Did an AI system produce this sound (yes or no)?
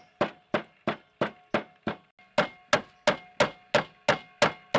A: no